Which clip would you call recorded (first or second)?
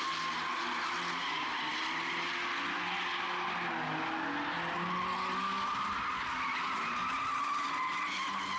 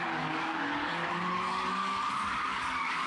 first